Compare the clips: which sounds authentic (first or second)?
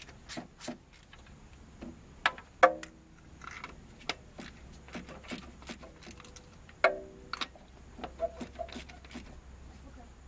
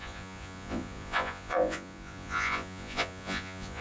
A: first